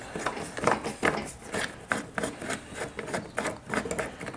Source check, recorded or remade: recorded